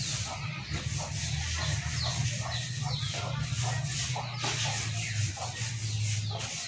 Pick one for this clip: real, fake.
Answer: real